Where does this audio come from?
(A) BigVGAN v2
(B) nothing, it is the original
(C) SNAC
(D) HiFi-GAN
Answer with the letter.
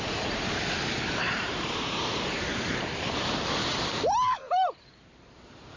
A